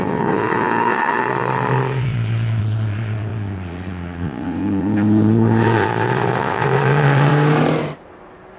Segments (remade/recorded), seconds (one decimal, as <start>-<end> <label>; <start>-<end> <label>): 0.0-7.3 remade; 7.3-8.6 recorded